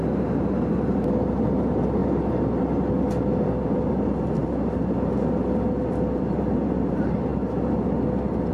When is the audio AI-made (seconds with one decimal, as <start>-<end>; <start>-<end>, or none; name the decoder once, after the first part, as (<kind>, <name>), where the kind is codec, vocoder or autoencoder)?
none